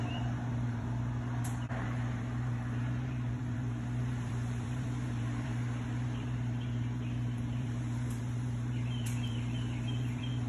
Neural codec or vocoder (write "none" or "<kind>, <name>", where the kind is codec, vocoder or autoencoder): vocoder, BigVGAN v2